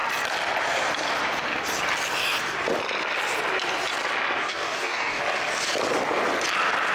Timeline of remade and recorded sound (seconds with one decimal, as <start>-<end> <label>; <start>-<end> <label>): 0.0-4.4 recorded; 4.4-5.2 remade; 5.2-6.9 recorded